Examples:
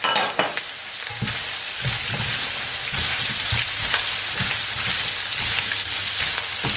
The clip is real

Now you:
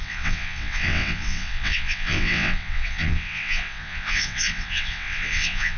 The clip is fake